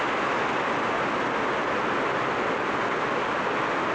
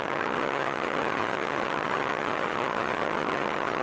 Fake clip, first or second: second